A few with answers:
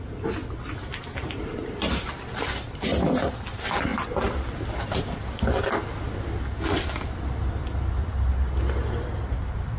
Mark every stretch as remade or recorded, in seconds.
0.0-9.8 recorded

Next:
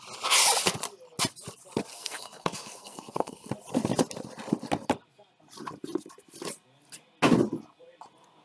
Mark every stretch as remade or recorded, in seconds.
0.0-1.9 recorded; 1.9-3.5 remade; 3.5-8.4 recorded

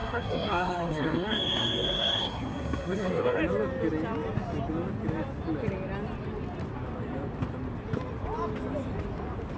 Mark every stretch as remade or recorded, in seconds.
0.0-3.4 remade; 3.4-9.6 recorded

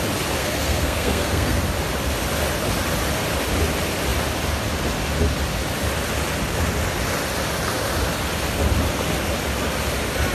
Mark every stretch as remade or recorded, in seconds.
0.0-0.4 recorded; 0.4-1.6 remade; 1.6-10.3 recorded